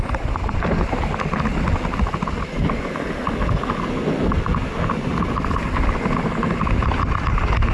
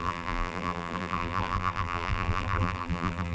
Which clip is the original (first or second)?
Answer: first